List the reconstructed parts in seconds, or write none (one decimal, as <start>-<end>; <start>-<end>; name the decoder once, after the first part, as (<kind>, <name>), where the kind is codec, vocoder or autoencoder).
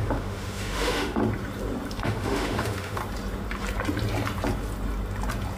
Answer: 0.0-1.2 (autoencoder, DAC-VAE); 2.0-3.0